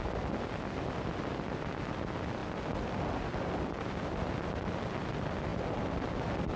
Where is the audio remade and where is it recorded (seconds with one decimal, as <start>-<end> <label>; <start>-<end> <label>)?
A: 0.0-6.6 recorded